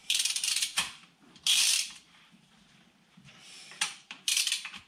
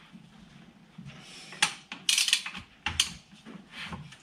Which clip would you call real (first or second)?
second